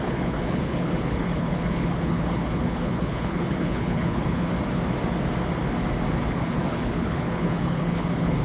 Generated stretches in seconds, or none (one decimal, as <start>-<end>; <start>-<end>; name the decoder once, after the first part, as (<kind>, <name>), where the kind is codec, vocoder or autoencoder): 0.0-4.5 (codec, HILCodec); 6.3-8.4